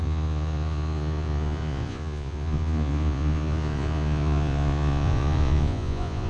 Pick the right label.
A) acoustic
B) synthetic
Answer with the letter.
B